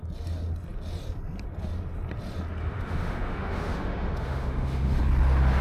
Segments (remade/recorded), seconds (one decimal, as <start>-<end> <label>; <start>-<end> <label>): 0.0-2.6 recorded; 2.6-5.0 remade; 5.0-5.6 recorded